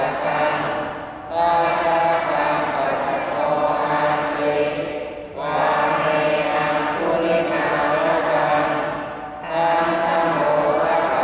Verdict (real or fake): real